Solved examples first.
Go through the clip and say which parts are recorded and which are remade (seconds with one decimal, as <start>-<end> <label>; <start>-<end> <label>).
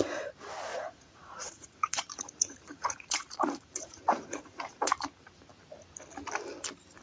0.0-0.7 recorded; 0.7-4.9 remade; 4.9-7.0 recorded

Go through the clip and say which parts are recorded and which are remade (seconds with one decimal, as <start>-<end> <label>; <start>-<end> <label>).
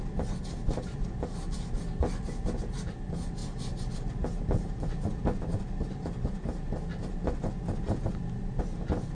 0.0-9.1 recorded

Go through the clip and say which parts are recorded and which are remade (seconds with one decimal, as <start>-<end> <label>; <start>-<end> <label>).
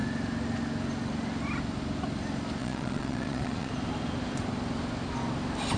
0.0-2.6 recorded; 2.6-3.7 remade; 3.7-5.8 recorded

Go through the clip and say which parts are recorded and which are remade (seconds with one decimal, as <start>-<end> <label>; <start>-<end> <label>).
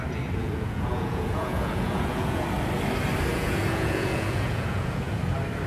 0.0-0.4 recorded; 0.4-2.4 remade; 2.4-3.3 recorded; 3.3-5.2 remade; 5.2-5.7 recorded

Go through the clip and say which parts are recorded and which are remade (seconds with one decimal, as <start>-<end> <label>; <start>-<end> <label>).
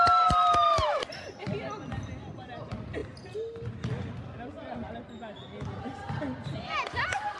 0.0-7.4 recorded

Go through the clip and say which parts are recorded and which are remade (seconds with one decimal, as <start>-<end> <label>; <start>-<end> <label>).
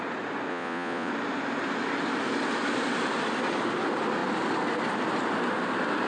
0.0-0.5 recorded; 0.5-1.1 remade; 1.1-6.1 recorded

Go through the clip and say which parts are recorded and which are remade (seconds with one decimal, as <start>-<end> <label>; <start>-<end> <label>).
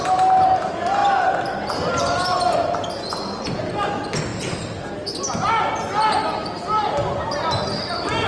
0.0-8.3 recorded